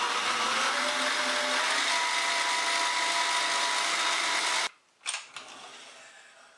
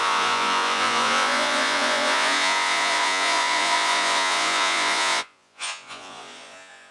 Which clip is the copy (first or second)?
second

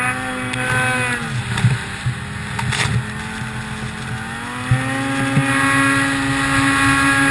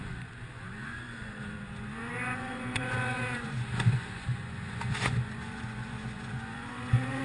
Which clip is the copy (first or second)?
second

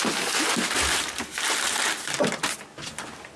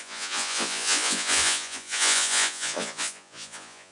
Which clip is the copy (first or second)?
second